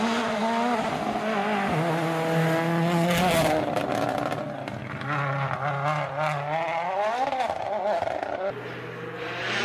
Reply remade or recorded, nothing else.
recorded